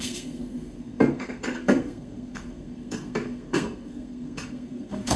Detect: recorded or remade remade